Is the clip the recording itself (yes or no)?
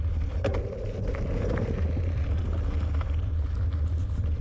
yes